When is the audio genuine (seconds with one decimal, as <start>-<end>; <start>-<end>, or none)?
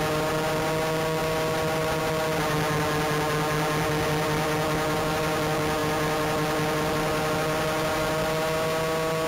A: 0.0-1.2; 2.0-5.8; 7.3-9.3